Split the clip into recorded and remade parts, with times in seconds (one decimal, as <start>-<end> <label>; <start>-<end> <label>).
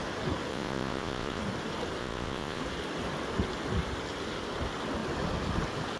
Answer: 0.0-0.5 recorded; 0.5-1.4 remade; 1.4-2.0 recorded; 2.0-2.6 remade; 2.6-6.0 recorded